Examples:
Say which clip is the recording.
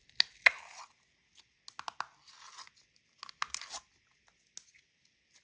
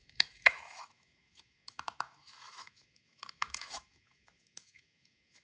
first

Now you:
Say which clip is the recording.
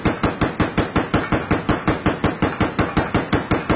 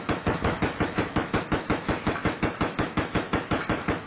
first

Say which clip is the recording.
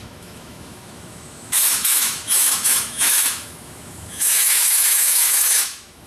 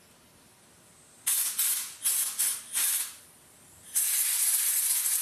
second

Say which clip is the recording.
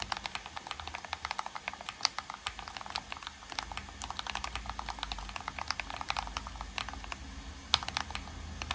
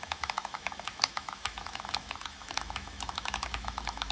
first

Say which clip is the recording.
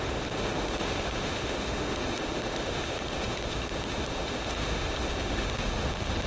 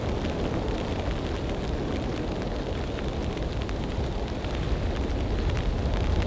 second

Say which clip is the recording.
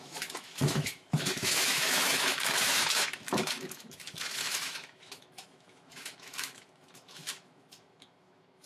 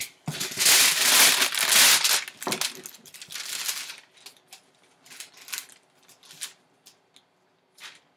second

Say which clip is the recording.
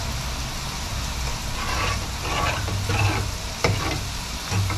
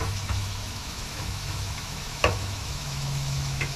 first